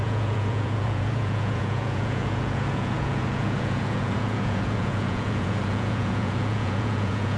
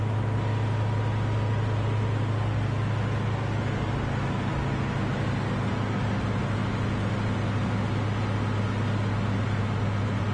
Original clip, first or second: second